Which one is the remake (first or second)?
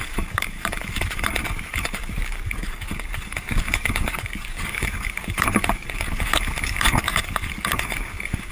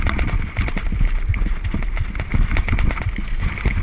first